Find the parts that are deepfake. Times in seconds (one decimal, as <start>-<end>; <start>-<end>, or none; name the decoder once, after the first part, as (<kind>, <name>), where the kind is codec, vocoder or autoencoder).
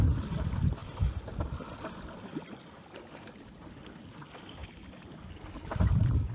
none